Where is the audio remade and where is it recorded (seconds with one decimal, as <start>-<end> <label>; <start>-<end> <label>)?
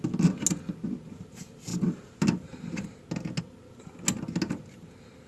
0.0-5.3 recorded